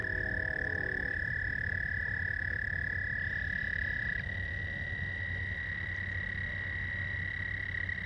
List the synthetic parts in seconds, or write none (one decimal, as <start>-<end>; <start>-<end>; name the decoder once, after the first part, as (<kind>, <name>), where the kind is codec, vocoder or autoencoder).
none